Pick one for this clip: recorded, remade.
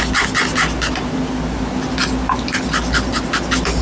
recorded